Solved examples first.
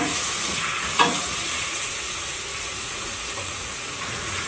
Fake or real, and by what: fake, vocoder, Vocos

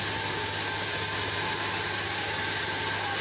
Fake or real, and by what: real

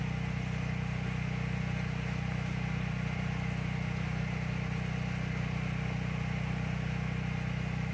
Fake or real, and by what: real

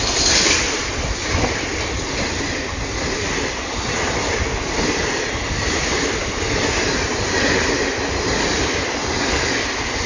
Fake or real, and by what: real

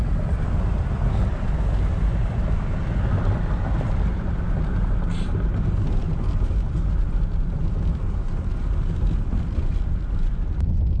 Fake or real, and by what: real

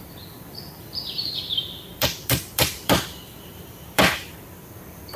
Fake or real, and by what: fake, vocoder, BigVGAN v2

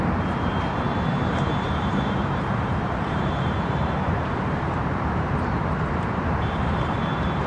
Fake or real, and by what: fake, vocoder, BigVGAN v2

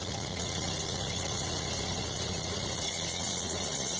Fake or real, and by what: fake, vocoder, Vocos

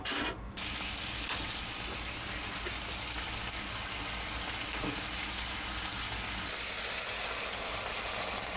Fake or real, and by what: real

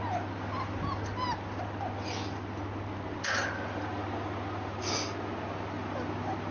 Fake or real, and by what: real